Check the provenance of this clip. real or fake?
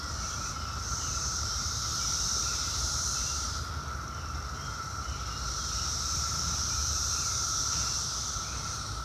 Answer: fake